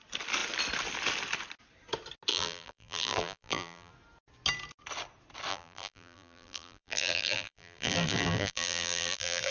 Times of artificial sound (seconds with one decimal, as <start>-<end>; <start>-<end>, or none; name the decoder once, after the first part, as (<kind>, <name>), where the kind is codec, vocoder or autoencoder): 2.3-3.9 (vocoder, BigVGAN v2); 5.5-9.5